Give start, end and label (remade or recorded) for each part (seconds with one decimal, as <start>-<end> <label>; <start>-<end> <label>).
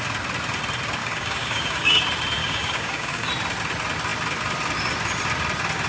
0.0-1.0 recorded; 1.0-2.0 remade; 2.0-2.4 recorded; 2.4-3.3 remade; 3.3-5.9 recorded